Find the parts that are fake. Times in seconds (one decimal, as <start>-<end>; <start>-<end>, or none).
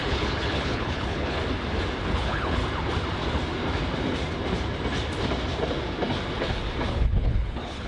0.0-1.4; 2.0-2.6; 6.9-7.9